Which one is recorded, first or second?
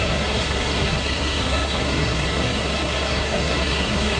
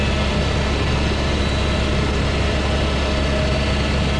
second